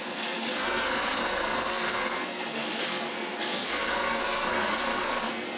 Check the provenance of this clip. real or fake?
fake